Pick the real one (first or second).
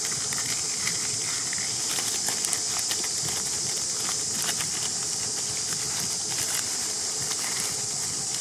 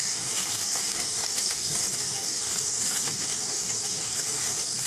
first